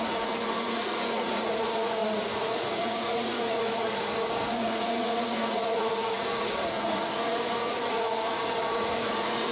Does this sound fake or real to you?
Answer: fake